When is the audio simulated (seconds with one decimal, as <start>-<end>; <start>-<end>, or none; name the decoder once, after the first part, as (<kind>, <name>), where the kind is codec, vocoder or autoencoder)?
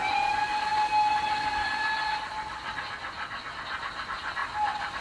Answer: 4.4-5.0 (vocoder, BigVGAN v2)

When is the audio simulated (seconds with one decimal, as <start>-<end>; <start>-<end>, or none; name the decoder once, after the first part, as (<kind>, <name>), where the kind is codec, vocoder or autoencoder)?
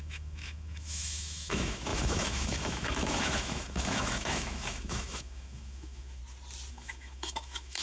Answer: 0.0-6.2 (autoencoder, DAC-VAE); 6.7-7.8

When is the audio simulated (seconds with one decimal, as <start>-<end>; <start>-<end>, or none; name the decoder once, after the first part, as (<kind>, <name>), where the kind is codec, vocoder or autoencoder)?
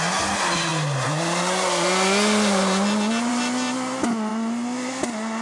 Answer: none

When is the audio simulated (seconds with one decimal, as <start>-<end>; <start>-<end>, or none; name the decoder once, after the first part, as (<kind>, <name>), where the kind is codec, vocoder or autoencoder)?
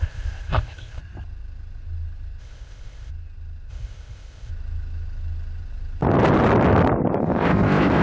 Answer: 0.0-1.0 (codec, ZipCodec); 2.4-3.1; 3.7-4.5; 7.2-8.0